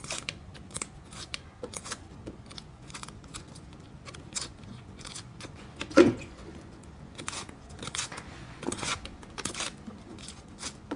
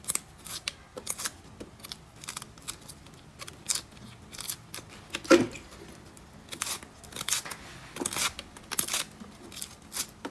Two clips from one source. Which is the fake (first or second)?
first